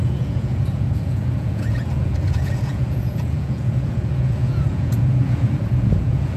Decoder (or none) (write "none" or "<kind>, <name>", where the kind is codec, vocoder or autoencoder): vocoder, Vocos